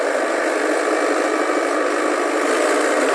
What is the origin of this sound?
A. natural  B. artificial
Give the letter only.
A